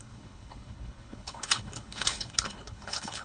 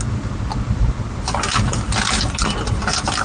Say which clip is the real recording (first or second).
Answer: second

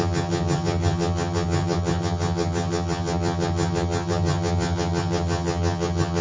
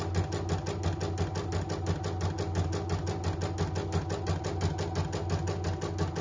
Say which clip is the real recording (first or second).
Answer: second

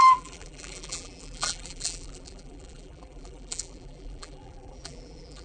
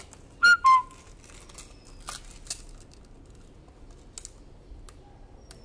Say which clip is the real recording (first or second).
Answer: second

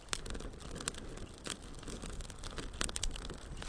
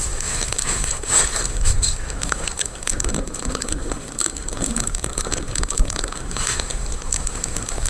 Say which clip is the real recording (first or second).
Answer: first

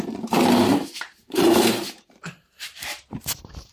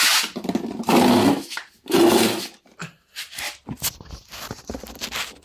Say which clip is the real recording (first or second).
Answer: second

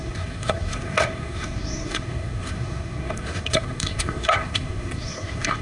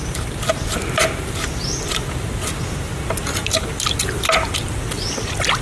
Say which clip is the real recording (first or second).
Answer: second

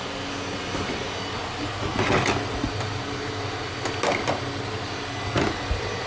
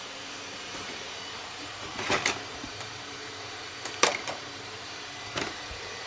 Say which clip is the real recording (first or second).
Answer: first